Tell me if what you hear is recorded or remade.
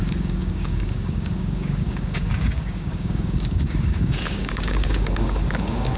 remade